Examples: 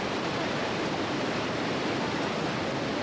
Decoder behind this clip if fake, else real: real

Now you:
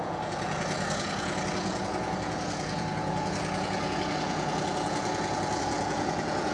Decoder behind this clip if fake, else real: fake, vocoder, Vocos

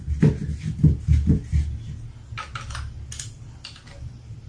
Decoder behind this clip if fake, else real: real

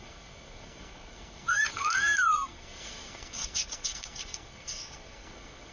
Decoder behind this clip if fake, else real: fake, codec, SNAC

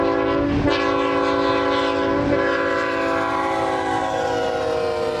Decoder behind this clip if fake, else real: real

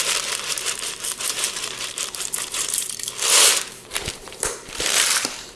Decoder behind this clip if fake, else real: fake, vocoder, BigVGAN v2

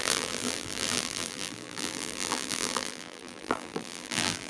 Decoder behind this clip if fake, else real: fake, vocoder, BigVGAN v2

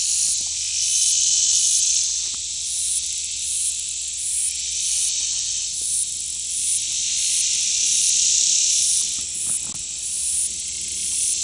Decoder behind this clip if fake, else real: real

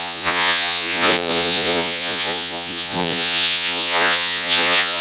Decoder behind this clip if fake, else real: fake, vocoder, Vocos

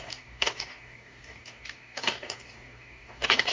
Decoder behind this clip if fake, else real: fake, codec, DAC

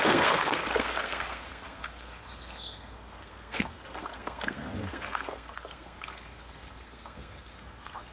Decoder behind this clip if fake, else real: fake, codec, SNAC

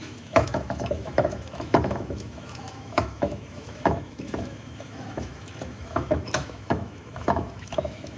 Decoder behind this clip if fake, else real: fake, autoencoder, DAC-VAE